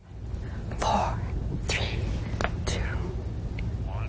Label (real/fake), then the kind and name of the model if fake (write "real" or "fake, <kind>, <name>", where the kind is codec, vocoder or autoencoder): real